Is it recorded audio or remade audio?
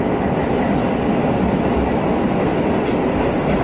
recorded